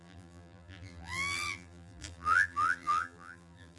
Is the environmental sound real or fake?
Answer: fake